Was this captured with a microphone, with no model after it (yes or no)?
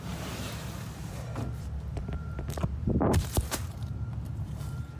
no